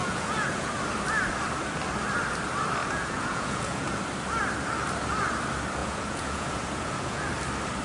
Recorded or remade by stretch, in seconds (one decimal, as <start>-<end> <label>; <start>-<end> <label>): 0.0-0.7 remade; 0.7-2.8 recorded; 2.8-4.0 remade; 4.0-5.8 recorded; 5.8-7.3 remade; 7.3-7.8 recorded